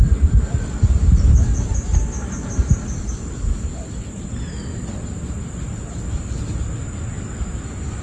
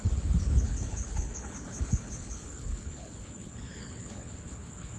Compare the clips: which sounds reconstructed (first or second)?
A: second